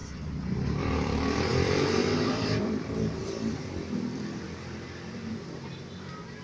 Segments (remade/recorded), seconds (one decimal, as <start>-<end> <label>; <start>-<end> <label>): 0.0-0.8 recorded; 0.8-6.4 remade